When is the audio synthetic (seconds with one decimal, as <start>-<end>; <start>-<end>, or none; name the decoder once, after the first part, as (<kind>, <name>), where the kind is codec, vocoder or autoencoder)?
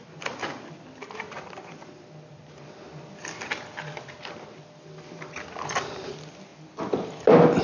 none